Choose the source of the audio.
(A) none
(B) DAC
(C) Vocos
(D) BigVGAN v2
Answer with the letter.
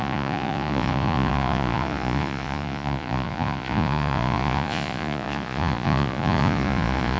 C